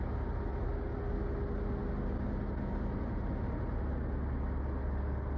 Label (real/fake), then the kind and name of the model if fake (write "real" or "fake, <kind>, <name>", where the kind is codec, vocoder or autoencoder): real